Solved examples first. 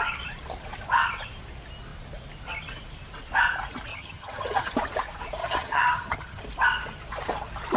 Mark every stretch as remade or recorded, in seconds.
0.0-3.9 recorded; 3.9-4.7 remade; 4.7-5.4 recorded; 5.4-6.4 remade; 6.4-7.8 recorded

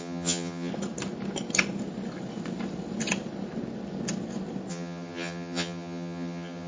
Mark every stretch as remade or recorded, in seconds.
0.0-0.7 remade; 0.7-4.7 recorded; 4.7-6.7 remade